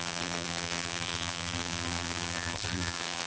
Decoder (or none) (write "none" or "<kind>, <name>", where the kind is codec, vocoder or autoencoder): vocoder, BigVGAN v2